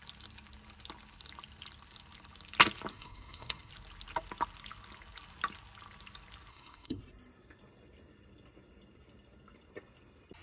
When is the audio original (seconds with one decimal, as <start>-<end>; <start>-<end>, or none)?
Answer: 0.0-2.9; 3.7-6.5; 7.0-10.4